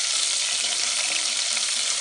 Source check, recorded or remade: remade